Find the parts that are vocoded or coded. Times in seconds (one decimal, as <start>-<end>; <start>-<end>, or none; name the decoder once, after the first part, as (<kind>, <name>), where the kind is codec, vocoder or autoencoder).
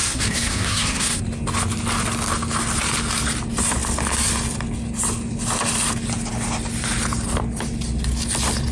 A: 0.0-1.2 (codec, SNAC)